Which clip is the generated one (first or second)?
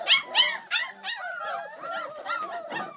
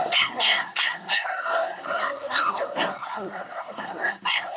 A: second